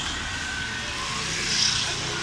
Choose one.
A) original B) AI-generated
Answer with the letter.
A